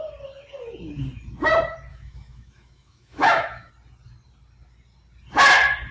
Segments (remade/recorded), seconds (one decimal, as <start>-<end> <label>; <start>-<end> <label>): 0.0-1.9 recorded; 1.9-3.7 remade; 3.7-5.9 recorded